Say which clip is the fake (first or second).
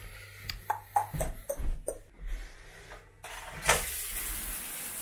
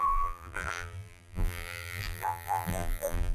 second